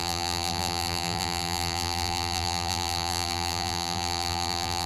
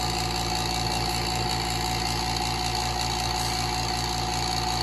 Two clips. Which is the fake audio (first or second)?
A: first